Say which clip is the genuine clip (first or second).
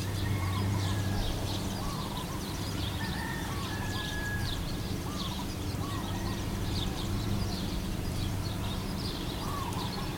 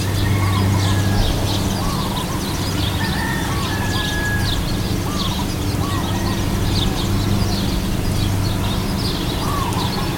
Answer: second